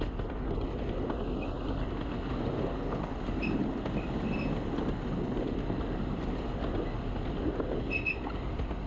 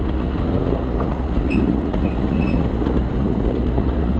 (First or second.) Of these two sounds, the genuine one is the first